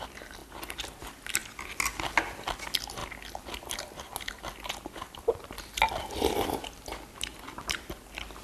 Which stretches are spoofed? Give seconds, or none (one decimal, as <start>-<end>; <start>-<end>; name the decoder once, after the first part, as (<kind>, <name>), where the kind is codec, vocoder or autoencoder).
none